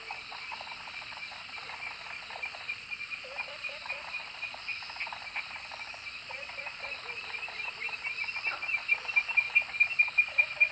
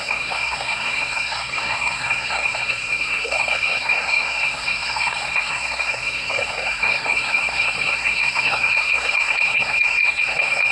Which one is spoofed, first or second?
second